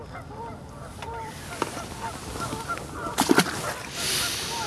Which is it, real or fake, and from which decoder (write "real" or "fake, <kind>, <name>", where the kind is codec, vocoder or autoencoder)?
real